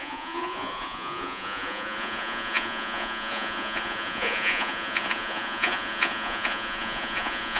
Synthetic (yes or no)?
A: yes